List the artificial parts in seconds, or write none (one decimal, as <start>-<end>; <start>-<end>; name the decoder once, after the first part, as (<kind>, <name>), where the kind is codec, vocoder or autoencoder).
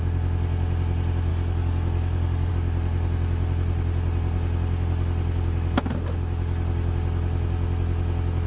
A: 1.3-2.5 (codec, DAC)